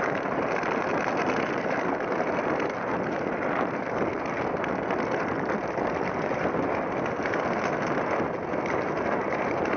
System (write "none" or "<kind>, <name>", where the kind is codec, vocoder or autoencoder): none